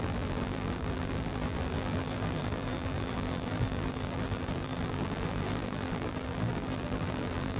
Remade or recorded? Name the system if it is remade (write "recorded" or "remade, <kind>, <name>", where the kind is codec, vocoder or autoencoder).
remade, vocoder, BigVGAN v2